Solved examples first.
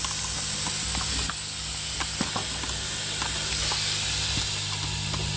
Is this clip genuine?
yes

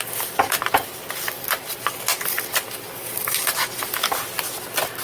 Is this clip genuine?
yes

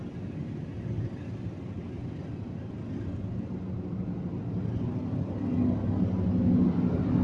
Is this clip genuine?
yes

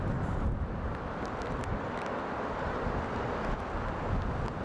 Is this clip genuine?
yes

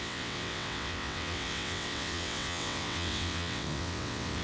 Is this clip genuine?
no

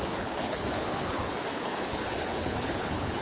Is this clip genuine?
no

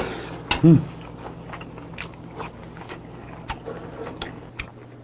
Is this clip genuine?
yes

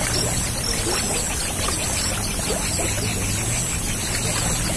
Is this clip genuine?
yes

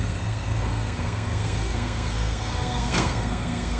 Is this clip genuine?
no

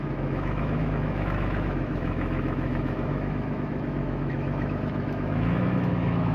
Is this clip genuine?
no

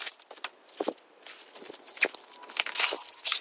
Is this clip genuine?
yes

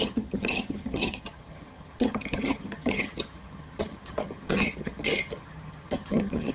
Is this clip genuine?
no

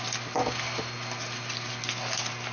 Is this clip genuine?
yes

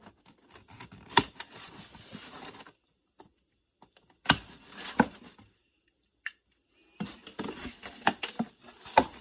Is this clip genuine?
yes